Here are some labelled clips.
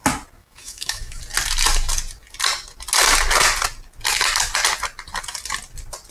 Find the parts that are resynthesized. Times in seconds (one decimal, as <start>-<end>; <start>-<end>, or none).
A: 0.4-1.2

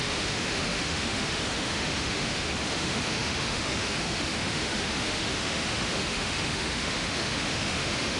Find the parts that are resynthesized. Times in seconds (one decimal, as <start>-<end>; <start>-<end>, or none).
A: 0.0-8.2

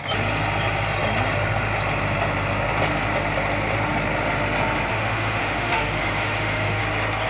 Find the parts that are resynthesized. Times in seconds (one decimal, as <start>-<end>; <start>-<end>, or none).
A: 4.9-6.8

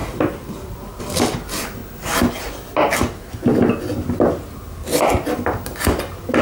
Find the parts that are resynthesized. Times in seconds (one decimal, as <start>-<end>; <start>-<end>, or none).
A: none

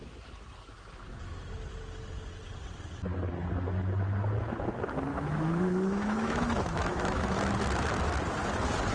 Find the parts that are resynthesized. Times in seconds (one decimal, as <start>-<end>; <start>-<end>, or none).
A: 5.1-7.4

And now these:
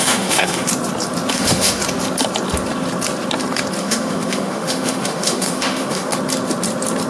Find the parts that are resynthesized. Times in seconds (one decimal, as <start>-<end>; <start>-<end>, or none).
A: 0.0-0.7; 1.3-1.8; 3.8-6.1